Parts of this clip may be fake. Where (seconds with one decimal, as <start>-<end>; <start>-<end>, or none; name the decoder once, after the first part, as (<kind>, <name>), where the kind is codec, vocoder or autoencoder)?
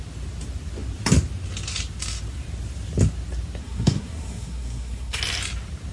3.6-5.2 (codec, SNAC)